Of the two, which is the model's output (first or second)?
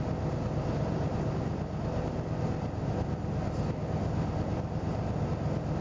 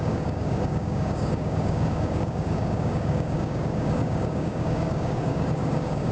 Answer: second